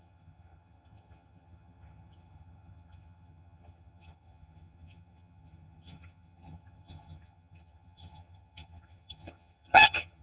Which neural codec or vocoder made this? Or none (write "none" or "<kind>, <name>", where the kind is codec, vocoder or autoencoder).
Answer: vocoder, HiFi-GAN